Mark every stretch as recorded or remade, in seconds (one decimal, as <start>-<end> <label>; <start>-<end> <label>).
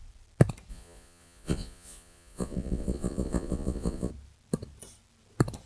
0.0-0.7 recorded; 0.7-4.1 remade; 4.1-5.7 recorded